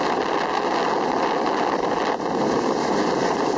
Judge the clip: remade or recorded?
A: recorded